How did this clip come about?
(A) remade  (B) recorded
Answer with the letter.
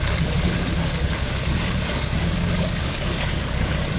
A